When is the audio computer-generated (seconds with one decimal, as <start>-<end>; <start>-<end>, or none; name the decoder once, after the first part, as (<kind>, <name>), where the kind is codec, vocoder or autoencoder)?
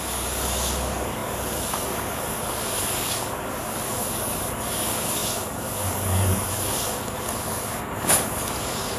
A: 0.0-9.0 (codec, DAC)